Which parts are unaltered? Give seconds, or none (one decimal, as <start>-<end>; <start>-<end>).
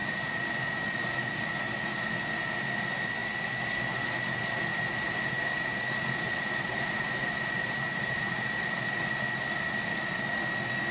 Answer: 1.3-4.7; 8.8-10.9